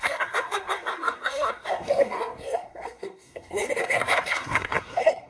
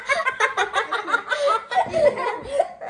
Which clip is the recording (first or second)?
second